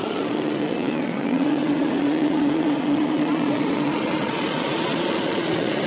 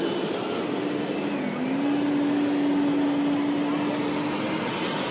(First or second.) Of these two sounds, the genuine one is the second